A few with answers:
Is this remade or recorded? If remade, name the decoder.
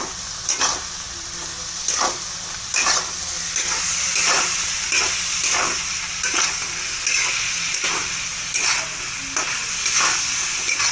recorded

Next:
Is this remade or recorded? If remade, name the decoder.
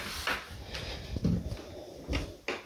recorded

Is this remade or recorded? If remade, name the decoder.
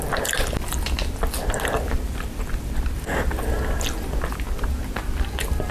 recorded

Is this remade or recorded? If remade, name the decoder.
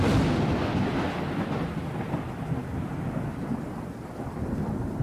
recorded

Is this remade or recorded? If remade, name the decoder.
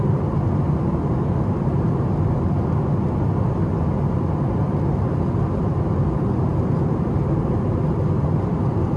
recorded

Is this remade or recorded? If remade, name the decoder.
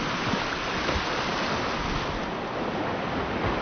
recorded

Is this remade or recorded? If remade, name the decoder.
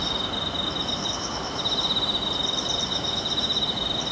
recorded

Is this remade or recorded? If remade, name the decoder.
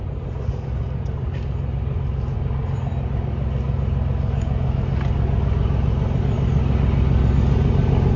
recorded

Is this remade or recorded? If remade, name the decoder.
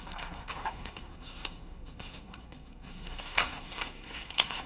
remade, codec, SNAC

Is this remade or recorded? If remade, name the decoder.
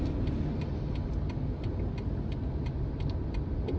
recorded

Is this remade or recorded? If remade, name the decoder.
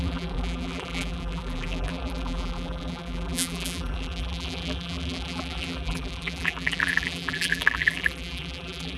remade, vocoder, BigVGAN v2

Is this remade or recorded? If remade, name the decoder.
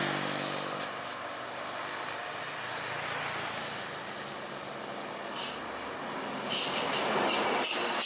recorded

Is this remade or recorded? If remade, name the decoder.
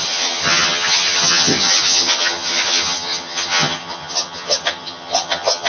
remade, vocoder, HiFi-GAN